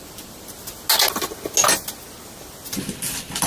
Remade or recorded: recorded